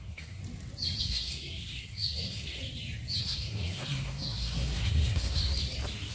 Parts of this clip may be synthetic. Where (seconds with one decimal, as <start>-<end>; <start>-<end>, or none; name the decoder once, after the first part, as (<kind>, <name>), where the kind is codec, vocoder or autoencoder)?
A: 0.0-0.4 (codec, SNAC); 1.0-2.6; 3.2-5.4